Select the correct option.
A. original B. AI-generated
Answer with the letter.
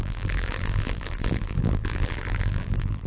B